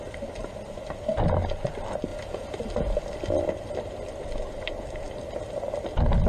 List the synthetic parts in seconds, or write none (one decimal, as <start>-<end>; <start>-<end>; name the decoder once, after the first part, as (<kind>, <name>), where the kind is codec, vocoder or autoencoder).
none